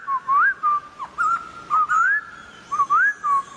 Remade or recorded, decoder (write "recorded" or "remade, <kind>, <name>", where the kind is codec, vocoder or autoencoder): recorded